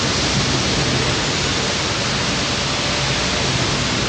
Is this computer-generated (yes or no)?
no